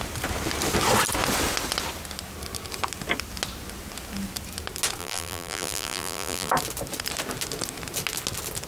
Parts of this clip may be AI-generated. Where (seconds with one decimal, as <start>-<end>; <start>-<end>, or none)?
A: 5.0-6.5